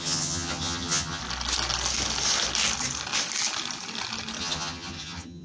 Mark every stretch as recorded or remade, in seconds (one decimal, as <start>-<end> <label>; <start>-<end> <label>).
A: 0.0-1.2 remade; 1.2-4.4 recorded; 4.4-5.4 remade